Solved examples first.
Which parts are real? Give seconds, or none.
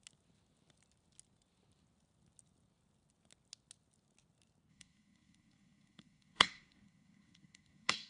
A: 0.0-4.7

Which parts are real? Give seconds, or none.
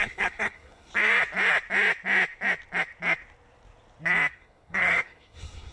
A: 0.9-4.3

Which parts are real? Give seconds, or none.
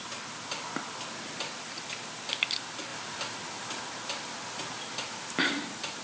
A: 0.0-6.0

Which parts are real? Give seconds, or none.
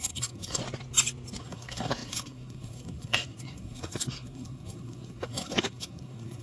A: 0.6-1.4